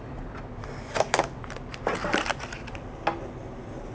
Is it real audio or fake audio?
real